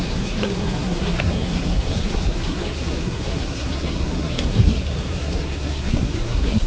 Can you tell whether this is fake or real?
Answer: fake